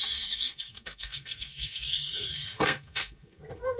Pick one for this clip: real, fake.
fake